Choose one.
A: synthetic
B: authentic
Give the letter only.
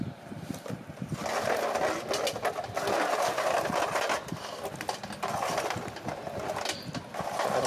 B